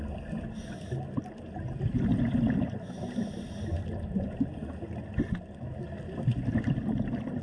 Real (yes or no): yes